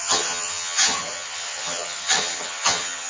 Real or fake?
fake